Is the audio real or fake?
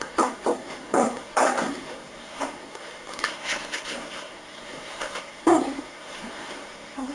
fake